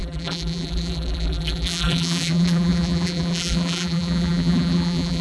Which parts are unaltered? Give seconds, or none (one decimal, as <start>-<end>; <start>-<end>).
none